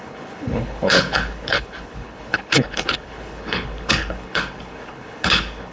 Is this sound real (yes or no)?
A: no